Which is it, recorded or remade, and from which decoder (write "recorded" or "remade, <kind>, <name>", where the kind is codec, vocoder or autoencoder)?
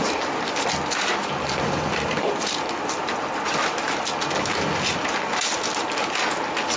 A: recorded